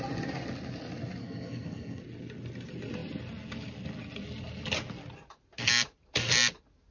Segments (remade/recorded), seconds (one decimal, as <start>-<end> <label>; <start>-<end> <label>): 0.0-1.2 recorded; 1.2-2.0 remade; 2.0-6.9 recorded